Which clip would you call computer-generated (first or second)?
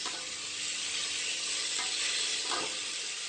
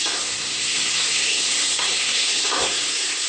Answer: second